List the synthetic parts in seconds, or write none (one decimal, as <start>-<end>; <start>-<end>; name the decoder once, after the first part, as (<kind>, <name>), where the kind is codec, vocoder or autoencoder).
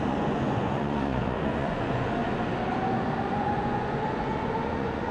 0.0-2.2 (vocoder, Vocos); 3.2-5.1